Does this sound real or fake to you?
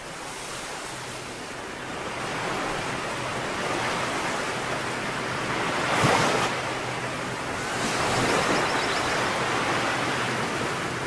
real